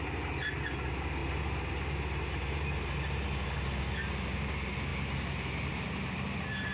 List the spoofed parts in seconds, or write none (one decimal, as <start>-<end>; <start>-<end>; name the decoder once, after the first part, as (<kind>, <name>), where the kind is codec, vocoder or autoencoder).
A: none

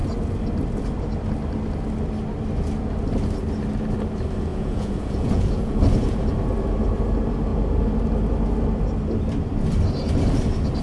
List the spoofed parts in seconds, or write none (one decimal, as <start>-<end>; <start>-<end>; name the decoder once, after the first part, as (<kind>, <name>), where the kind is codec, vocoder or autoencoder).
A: 4.5-5.8 (vocoder, Vocos)

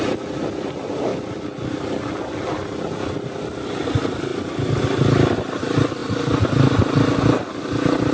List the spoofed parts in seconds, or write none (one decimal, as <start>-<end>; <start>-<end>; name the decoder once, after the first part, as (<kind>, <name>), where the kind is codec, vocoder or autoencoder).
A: none

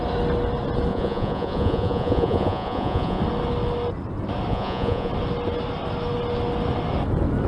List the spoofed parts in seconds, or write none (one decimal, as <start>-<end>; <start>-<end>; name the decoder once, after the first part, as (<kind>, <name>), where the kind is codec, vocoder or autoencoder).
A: 0.9-3.2 (vocoder, Vocos); 4.5-5.1